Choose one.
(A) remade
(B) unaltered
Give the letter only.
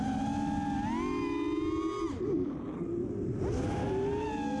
B